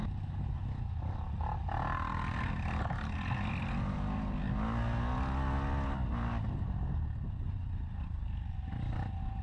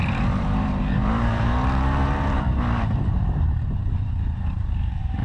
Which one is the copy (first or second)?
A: second